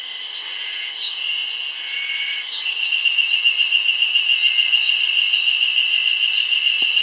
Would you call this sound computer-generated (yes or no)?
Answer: no